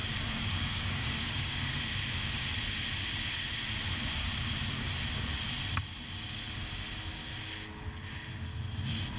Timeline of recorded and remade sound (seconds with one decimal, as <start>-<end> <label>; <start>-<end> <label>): 0.0-1.8 remade; 1.8-9.2 recorded